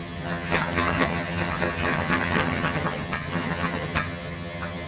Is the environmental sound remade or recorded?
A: remade